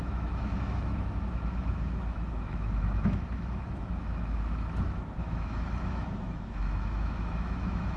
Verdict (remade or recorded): remade